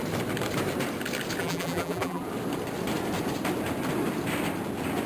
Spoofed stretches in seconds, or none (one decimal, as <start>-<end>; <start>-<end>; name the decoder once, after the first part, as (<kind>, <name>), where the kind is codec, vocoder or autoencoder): 1.4-2.2 (vocoder, BigVGAN v2)